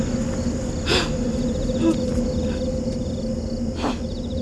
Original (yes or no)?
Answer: yes